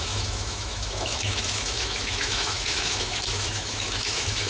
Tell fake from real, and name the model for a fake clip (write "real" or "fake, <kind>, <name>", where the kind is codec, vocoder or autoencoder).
fake, autoencoder, DAC-VAE